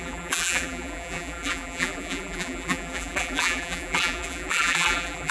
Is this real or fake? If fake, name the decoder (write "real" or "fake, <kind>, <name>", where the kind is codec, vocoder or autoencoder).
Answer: fake, vocoder, BigVGAN v2